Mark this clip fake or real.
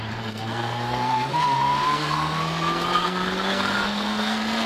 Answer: fake